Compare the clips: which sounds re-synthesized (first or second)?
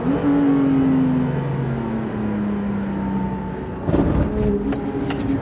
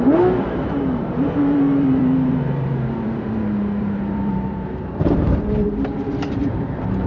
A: second